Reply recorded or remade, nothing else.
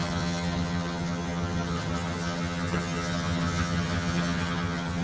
remade